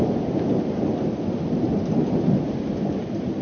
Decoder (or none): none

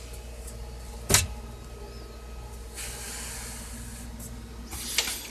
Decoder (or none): none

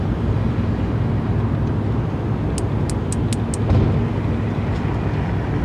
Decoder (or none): none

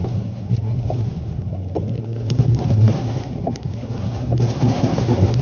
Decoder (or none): codec, SNAC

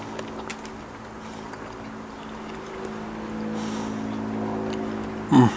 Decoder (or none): none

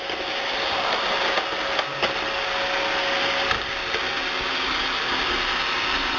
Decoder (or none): none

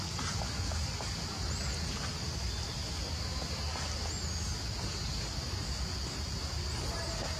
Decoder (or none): none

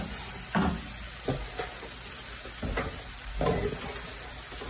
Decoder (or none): none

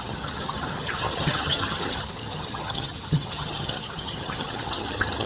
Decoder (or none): vocoder, HiFi-GAN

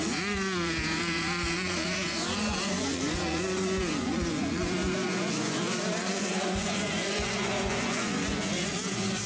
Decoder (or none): vocoder, Vocos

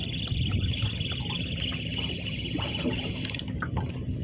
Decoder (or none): none